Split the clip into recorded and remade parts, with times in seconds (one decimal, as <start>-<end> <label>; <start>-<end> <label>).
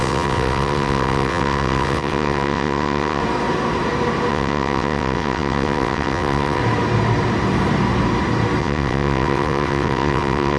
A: 0.0-3.2 remade; 3.2-4.3 recorded; 4.3-6.6 remade; 6.6-8.6 recorded; 8.6-10.6 remade